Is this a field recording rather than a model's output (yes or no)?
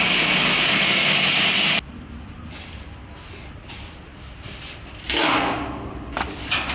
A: yes